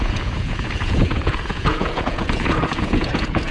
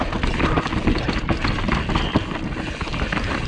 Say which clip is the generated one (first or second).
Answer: first